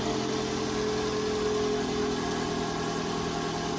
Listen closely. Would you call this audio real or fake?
real